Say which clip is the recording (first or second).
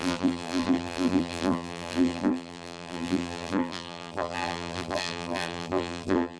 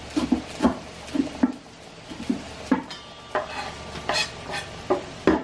second